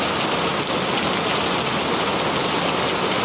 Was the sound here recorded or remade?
recorded